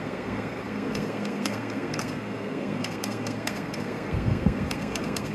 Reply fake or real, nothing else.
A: fake